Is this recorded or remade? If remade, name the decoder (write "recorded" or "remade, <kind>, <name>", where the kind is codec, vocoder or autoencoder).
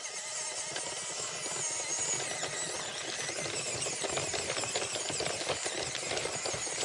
recorded